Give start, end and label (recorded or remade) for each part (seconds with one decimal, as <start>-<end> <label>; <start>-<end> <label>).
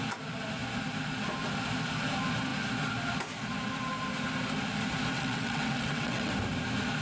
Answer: 0.0-5.1 recorded; 5.1-6.3 remade; 6.3-7.0 recorded